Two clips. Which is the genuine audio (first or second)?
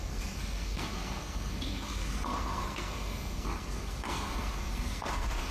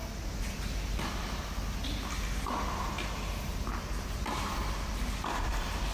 second